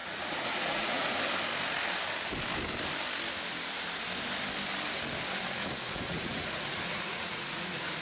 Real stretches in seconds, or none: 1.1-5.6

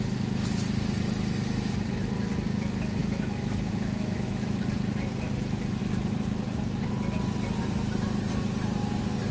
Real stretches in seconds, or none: 0.0-3.0; 4.6-9.3